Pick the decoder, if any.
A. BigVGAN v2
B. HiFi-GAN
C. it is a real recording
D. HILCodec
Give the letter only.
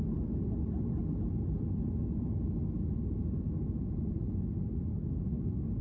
C